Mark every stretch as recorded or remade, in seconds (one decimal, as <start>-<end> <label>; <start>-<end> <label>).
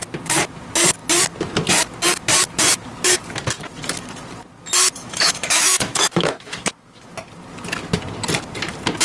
0.0-5.0 recorded; 5.0-7.1 remade; 7.1-9.0 recorded